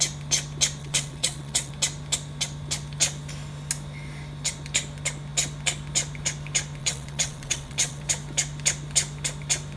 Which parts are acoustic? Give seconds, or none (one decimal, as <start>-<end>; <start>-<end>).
0.0-0.8; 1.7-6.8; 8.0-9.8